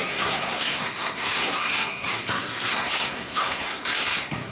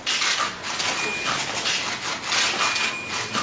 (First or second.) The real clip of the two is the second